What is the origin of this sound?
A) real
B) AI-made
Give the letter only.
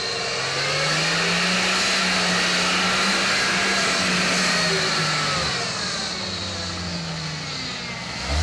A